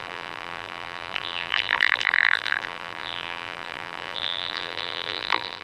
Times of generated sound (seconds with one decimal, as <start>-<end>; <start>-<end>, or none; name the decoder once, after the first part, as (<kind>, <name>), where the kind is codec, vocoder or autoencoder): 0.0-5.6 (vocoder, BigVGAN v2)